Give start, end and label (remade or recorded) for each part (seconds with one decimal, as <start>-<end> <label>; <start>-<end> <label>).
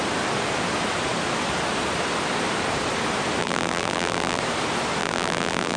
0.0-3.4 recorded; 3.4-4.4 remade; 4.4-5.0 recorded; 5.0-5.8 remade